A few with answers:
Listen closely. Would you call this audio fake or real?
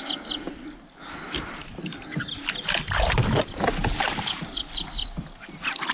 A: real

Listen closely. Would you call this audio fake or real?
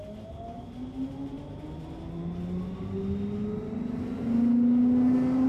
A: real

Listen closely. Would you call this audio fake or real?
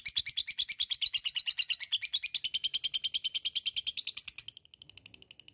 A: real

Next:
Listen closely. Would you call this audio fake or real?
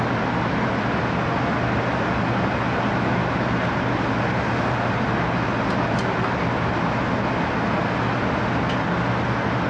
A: real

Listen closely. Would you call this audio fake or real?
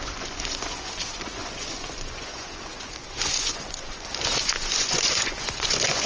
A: fake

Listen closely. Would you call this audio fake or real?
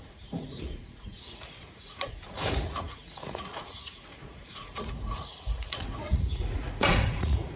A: fake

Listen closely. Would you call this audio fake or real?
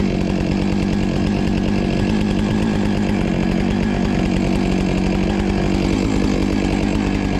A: real